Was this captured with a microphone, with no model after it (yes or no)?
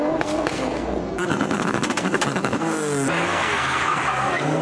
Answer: no